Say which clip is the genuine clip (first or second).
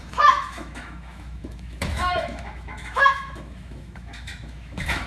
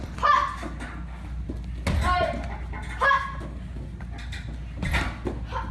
second